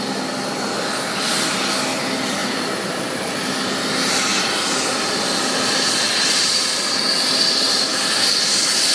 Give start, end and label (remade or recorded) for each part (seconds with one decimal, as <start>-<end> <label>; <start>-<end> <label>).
0.0-2.4 recorded; 2.4-3.5 remade; 3.5-6.4 recorded; 6.4-7.0 remade; 7.0-8.9 recorded

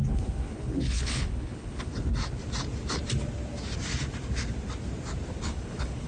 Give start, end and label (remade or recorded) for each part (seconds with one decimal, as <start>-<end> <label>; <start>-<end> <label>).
0.0-1.9 remade; 1.9-5.4 recorded; 5.4-6.1 remade

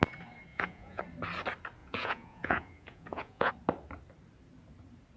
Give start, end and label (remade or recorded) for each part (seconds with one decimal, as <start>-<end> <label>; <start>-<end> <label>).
0.0-0.5 recorded; 0.5-1.0 remade; 1.0-1.8 recorded; 1.8-3.5 remade; 3.5-5.2 recorded

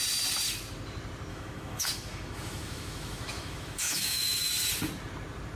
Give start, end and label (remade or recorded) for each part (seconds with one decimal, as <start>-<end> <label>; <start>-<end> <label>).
0.0-1.3 recorded; 1.3-4.5 remade; 4.5-5.6 recorded

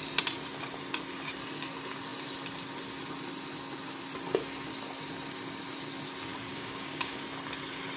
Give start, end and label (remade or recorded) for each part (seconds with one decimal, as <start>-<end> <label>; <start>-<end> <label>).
0.0-6.5 recorded; 6.5-7.2 remade; 7.2-8.0 recorded

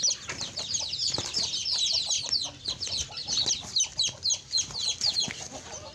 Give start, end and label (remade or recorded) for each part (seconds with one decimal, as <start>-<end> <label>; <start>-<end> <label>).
0.0-5.9 recorded